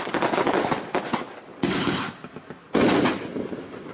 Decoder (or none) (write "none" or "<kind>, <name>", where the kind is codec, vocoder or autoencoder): none